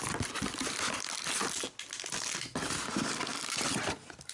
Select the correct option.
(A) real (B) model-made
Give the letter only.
A